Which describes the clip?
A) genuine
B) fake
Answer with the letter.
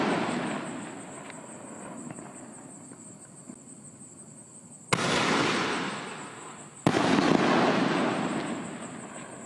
A